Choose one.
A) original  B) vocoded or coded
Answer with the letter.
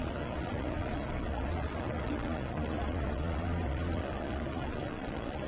B